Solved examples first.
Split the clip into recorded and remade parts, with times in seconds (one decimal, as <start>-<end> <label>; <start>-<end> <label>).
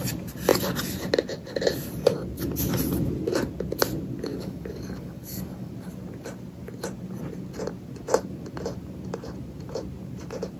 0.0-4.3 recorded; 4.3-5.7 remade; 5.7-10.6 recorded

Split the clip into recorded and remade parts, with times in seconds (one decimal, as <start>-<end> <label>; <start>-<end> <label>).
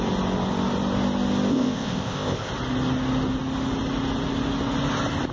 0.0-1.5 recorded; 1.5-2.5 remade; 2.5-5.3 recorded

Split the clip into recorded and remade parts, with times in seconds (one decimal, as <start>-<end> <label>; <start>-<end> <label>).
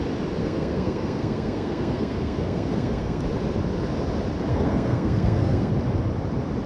0.0-0.4 recorded; 0.4-3.2 remade; 3.2-4.5 recorded; 4.5-5.7 remade; 5.7-6.7 recorded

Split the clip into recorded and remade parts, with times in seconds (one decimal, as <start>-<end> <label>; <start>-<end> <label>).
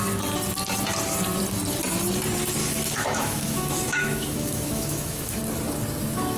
0.0-2.6 recorded; 2.6-5.4 remade; 5.4-6.4 recorded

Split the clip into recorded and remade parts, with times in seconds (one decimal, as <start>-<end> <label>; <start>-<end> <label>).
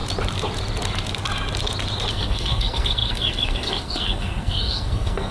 0.0-2.1 recorded; 2.1-5.3 remade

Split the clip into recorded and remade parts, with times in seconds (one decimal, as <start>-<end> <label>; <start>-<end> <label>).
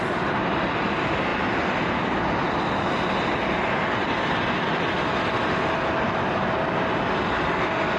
0.0-8.0 recorded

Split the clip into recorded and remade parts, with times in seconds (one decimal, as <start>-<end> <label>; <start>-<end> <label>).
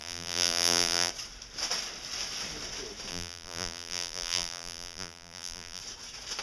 0.0-1.1 remade; 1.1-3.1 recorded; 3.1-5.8 remade; 5.8-6.4 recorded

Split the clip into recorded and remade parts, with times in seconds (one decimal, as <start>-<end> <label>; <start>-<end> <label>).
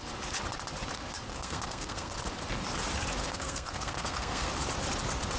0.0-1.3 recorded; 1.3-2.1 remade; 2.1-3.2 recorded; 3.2-4.5 remade; 4.5-5.4 recorded